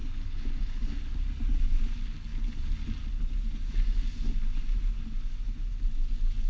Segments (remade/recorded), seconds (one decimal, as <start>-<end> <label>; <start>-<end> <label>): 0.0-1.1 remade; 1.1-6.5 recorded